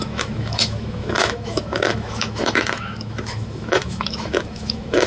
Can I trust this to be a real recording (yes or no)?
no